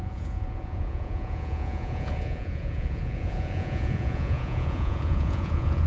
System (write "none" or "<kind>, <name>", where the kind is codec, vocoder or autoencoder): vocoder, Vocos